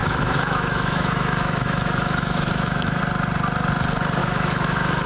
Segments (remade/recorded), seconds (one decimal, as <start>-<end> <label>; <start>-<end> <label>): 0.0-3.0 remade; 3.0-4.2 recorded; 4.2-5.1 remade